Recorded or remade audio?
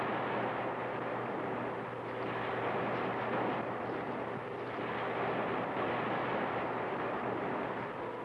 recorded